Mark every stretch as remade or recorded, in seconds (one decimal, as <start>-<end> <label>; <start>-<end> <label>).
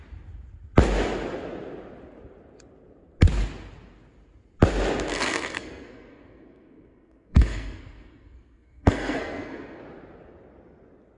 0.0-5.1 recorded; 5.1-9.8 remade; 9.8-11.2 recorded